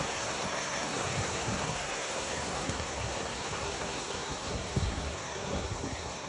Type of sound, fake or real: fake